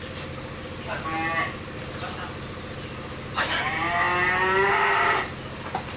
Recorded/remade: recorded